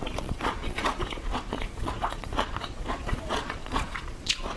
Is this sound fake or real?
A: fake